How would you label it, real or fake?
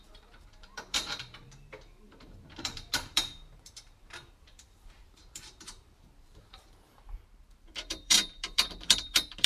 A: fake